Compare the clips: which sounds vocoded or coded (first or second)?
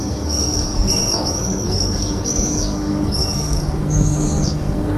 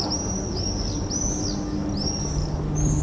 first